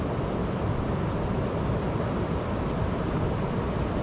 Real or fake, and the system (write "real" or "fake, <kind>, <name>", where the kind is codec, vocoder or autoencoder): real